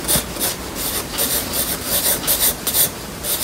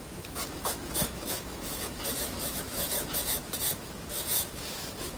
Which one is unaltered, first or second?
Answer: first